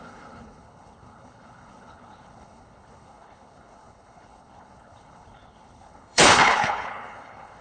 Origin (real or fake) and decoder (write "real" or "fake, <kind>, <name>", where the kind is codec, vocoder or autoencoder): fake, codec, HILCodec